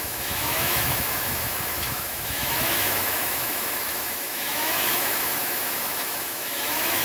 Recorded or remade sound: remade